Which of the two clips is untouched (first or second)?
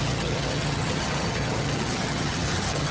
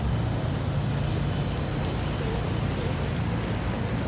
second